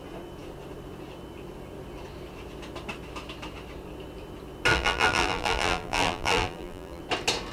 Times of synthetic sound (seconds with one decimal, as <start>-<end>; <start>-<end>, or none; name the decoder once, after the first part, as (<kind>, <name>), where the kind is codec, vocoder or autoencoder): 4.7-7.0 (vocoder, BigVGAN v2)